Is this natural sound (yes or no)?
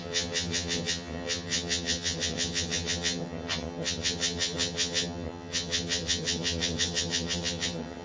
no